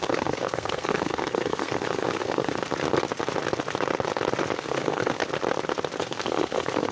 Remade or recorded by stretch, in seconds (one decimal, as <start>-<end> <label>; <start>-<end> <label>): 0.0-2.6 remade; 2.6-4.6 recorded; 4.6-5.2 remade; 5.2-6.0 recorded; 6.0-6.9 remade